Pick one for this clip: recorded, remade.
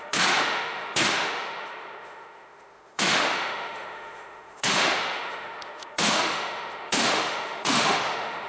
remade